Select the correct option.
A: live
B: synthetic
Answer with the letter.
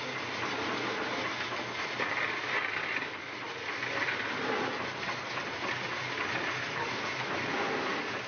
A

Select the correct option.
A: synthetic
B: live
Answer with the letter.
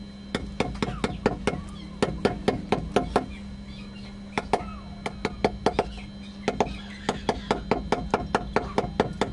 B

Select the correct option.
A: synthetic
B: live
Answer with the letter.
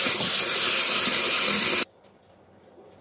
B